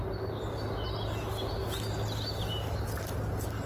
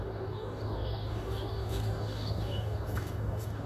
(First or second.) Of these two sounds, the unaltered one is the first